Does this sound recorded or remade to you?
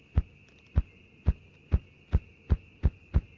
recorded